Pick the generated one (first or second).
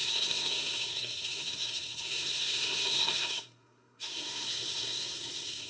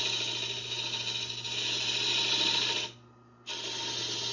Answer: first